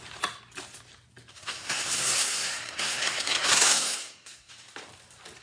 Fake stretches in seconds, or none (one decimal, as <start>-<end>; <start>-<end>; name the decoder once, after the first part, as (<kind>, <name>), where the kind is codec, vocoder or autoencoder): 1.3-4.5 (codec, SNAC)